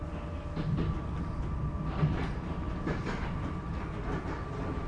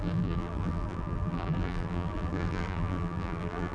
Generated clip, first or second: second